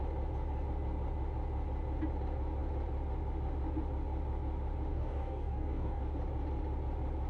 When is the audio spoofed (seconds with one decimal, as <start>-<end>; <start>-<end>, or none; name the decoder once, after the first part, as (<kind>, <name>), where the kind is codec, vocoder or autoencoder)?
4.9-6.0 (codec, DAC)